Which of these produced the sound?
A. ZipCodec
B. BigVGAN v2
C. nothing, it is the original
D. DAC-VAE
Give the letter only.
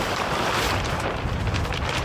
B